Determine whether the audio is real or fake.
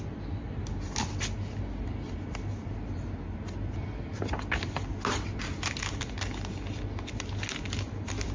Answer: real